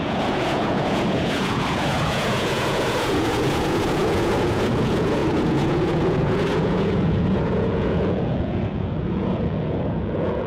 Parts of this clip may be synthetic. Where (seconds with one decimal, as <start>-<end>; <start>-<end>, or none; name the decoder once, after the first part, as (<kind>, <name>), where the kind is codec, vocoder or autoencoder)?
0.0-10.5 (vocoder, Vocos)